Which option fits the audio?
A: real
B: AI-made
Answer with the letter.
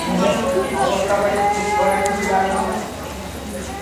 A